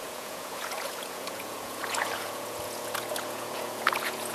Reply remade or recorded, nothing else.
remade